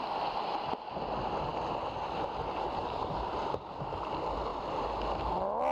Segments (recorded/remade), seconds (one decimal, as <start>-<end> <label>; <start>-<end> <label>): 0.0-5.7 recorded